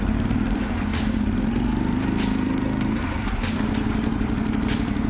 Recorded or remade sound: remade